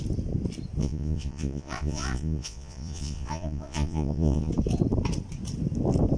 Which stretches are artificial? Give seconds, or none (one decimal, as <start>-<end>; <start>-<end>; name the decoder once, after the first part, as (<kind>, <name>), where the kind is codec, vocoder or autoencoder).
0.8-4.5 (vocoder, Vocos)

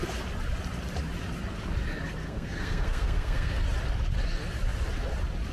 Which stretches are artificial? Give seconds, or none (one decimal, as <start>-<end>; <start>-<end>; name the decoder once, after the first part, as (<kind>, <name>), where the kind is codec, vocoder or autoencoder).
2.2-3.6 (codec, SNAC)